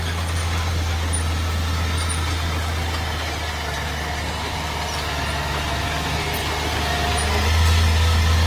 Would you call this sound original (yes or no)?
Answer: yes